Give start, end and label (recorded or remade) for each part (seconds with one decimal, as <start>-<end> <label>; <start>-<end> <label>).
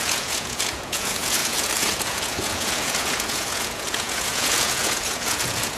0.0-5.8 remade